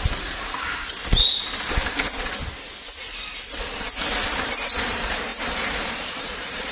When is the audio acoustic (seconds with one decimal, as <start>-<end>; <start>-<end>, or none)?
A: 0.8-4.8